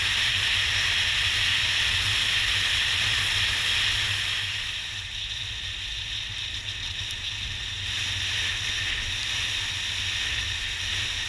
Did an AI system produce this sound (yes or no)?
no